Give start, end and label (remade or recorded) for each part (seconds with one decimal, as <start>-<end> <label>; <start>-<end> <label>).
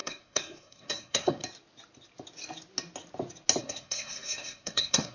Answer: 0.0-1.4 remade; 1.4-3.6 recorded; 3.6-5.1 remade